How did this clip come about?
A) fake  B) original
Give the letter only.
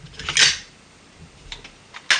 B